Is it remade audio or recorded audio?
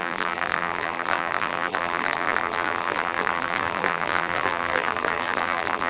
remade